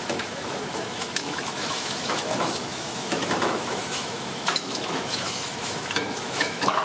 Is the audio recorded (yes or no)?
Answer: no